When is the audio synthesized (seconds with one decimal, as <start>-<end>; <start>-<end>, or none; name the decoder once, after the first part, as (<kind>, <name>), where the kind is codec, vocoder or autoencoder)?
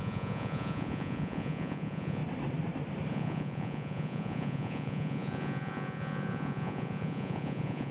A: 0.0-2.2 (vocoder, Vocos); 3.1-7.9